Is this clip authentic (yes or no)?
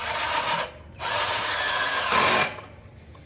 yes